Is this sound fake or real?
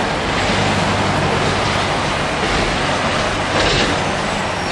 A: real